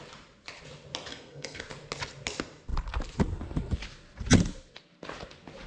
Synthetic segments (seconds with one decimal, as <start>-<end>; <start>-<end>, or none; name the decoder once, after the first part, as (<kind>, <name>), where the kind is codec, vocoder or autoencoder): 1.1-1.6 (codec, SNAC)